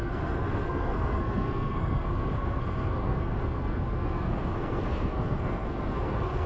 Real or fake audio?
fake